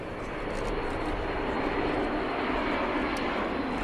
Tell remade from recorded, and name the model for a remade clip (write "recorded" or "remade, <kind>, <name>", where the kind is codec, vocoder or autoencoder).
recorded